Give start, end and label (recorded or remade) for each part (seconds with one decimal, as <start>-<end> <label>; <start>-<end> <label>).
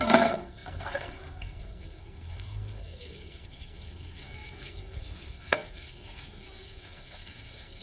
0.0-7.8 remade